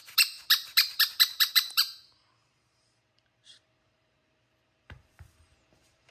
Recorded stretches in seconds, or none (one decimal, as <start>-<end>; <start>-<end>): 0.0-1.5